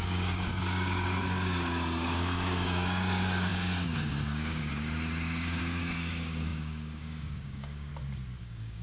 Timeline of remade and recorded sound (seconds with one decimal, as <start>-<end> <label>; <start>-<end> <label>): 0.0-7.9 remade; 7.9-8.4 recorded; 8.4-8.8 remade